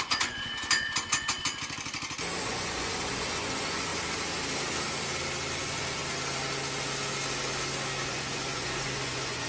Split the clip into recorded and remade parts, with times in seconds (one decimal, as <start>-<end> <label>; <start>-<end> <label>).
0.0-1.4 remade; 1.4-2.5 recorded; 2.5-3.9 remade; 3.9-5.6 recorded; 5.6-6.0 remade; 6.0-8.1 recorded; 8.1-9.5 remade